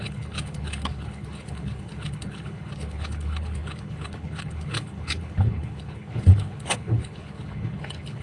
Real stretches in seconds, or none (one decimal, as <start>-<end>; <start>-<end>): none